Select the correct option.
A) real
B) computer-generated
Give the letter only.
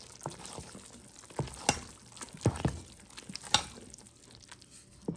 A